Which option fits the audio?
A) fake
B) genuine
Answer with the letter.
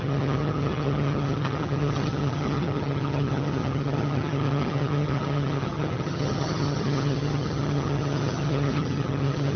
A